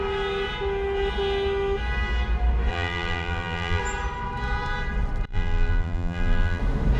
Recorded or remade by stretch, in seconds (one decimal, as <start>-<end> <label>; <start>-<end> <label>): 0.0-2.7 recorded; 2.7-3.8 remade; 3.8-5.3 recorded; 5.3-6.6 remade; 6.6-7.0 recorded